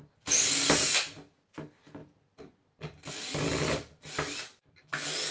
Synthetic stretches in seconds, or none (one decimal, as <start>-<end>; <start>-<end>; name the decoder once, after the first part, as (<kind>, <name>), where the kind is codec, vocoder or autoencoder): none